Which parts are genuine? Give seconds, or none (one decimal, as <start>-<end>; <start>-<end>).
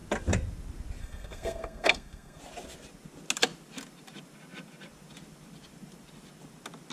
0.0-1.0; 2.4-6.9